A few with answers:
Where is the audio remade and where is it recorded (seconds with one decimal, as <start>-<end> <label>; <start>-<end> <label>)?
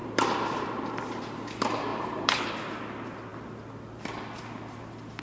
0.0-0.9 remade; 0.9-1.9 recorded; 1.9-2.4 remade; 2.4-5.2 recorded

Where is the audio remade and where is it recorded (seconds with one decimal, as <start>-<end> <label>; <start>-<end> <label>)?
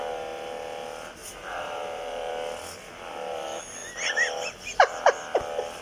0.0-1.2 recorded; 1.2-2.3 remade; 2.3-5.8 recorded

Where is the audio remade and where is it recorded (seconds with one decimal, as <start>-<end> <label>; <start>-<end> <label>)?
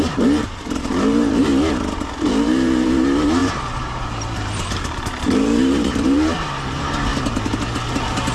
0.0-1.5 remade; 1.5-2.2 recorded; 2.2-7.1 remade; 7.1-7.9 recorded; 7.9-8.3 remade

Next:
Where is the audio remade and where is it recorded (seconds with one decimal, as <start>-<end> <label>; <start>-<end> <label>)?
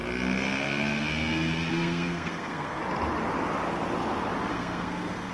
0.0-1.7 recorded; 1.7-2.8 remade; 2.8-4.5 recorded; 4.5-5.3 remade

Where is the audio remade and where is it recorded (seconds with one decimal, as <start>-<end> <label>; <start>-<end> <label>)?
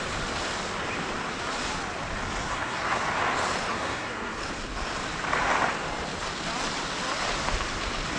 0.0-2.5 recorded; 2.5-3.0 remade; 3.0-3.7 recorded; 3.7-4.4 remade; 4.4-8.2 recorded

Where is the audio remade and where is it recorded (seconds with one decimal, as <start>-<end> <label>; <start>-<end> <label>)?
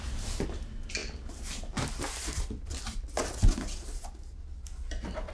0.0-5.3 recorded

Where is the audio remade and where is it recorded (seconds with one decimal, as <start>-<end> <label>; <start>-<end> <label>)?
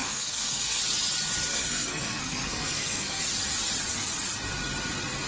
0.0-0.8 remade; 0.8-1.5 recorded; 1.5-3.2 remade; 3.2-5.3 recorded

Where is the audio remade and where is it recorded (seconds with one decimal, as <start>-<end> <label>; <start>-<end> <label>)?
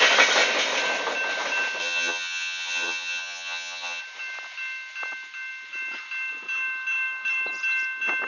0.0-1.8 recorded; 1.8-4.0 remade; 4.0-8.3 recorded